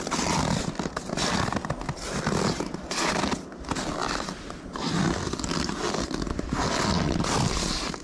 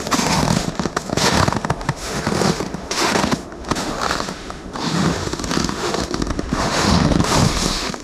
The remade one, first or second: second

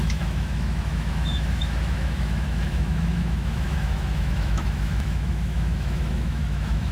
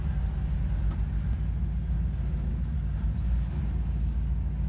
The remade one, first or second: first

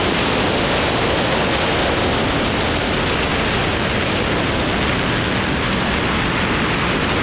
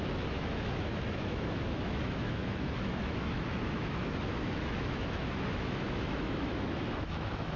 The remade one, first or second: second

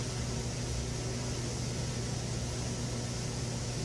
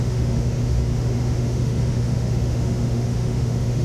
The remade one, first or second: second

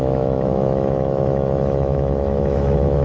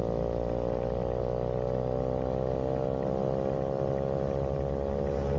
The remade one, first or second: first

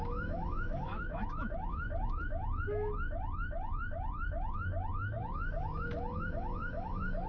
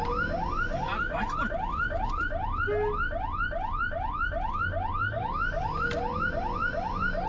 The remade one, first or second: first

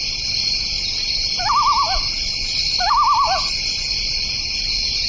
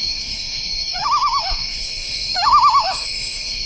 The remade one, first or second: second